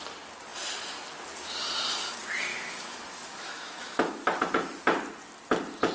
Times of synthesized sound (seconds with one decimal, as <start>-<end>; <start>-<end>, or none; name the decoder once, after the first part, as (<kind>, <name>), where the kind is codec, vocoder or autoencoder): 2.5-4.4 (autoencoder, DAC-VAE)